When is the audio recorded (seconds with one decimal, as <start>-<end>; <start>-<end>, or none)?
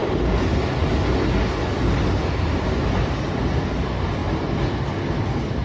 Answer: 0.0-5.6